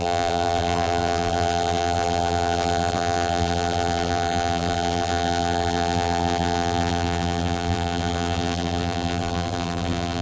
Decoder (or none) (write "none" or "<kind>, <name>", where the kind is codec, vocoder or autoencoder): vocoder, BigVGAN v2